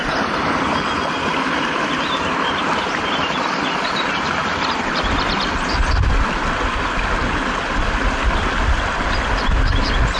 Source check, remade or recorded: recorded